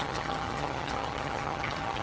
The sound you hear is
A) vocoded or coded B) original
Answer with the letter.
A